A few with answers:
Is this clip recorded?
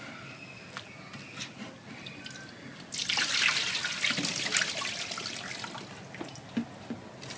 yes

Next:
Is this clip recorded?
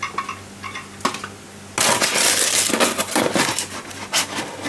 yes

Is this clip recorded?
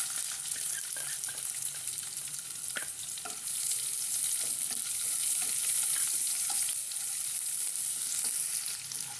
yes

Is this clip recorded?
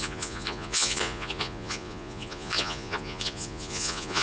no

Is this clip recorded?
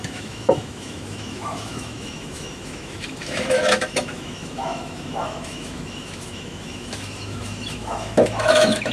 no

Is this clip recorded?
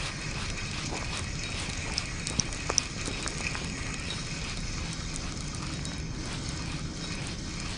yes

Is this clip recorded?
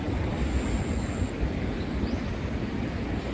yes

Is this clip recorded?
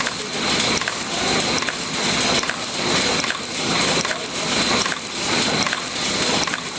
yes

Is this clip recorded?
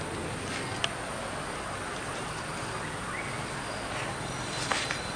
yes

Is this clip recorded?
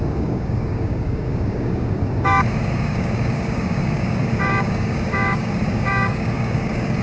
no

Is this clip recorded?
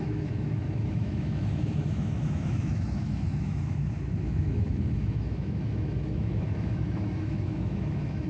no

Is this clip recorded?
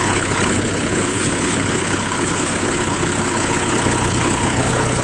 no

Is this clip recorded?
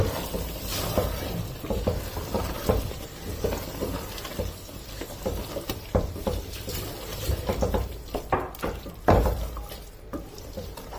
no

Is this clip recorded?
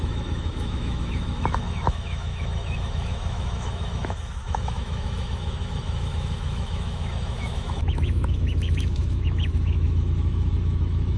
no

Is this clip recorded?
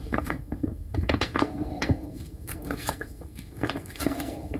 no